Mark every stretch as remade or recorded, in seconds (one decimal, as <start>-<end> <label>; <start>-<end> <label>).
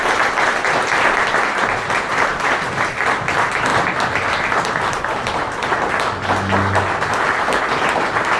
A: 0.0-8.4 recorded